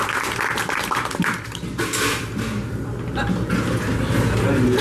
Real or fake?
real